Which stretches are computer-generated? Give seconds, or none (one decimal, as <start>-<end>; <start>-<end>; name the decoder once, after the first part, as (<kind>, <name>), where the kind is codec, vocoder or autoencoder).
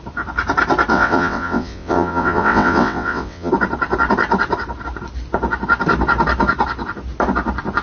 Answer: 0.9-3.5 (vocoder, WaveNeXt)